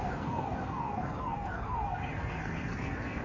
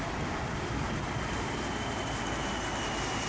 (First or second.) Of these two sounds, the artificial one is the first